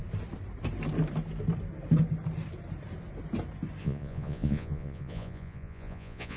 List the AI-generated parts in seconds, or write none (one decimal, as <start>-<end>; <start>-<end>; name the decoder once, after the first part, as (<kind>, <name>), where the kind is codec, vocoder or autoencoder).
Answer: 3.8-6.4 (vocoder, Vocos)